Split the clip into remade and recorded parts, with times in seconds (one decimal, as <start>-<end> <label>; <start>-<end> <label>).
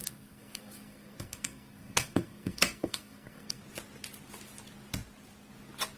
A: 0.0-3.6 remade; 3.6-6.0 recorded